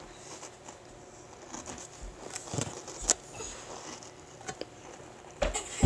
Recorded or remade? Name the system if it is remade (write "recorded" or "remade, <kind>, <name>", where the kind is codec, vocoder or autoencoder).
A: recorded